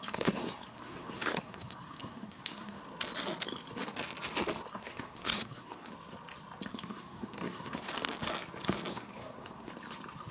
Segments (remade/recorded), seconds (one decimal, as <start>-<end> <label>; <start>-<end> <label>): 0.0-2.8 remade; 2.8-4.7 recorded; 4.7-5.9 remade; 5.9-6.7 recorded; 6.7-7.9 remade; 7.9-8.9 recorded; 8.9-9.7 remade; 9.7-10.3 recorded